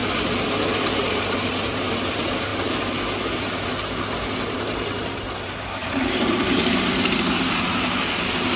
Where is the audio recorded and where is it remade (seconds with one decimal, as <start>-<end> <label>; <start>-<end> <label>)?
0.0-0.6 recorded; 0.6-2.5 remade; 2.5-4.5 recorded; 4.5-8.6 remade